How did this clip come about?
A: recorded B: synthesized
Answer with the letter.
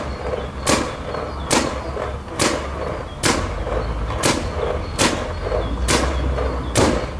A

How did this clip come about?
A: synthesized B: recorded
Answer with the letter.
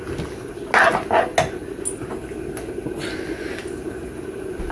B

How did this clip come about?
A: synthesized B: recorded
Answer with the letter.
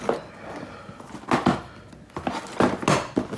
B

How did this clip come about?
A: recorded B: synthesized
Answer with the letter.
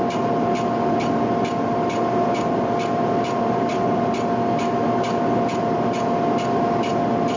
A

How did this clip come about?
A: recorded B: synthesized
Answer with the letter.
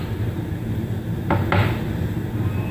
A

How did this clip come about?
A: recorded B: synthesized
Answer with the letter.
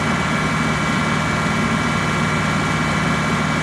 A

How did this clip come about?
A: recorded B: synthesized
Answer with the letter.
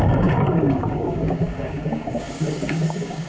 B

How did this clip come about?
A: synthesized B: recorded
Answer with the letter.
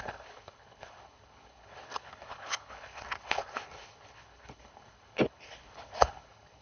A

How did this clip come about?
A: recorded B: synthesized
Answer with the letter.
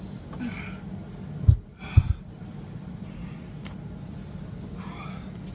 A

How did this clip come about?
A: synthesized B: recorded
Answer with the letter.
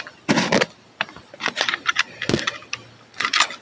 B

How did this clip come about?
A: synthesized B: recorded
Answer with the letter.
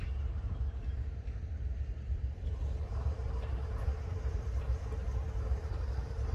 A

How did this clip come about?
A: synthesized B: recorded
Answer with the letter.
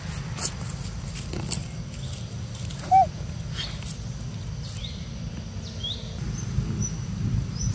B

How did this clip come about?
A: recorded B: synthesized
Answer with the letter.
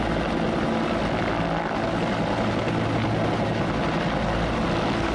A